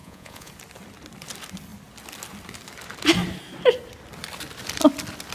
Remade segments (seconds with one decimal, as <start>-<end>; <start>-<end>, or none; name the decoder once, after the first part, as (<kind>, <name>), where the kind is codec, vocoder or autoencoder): 0.0-0.5 (vocoder, Vocos)